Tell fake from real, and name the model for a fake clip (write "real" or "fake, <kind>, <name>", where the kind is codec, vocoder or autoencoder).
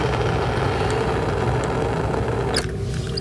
real